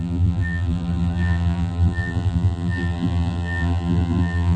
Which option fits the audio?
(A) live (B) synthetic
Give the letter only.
B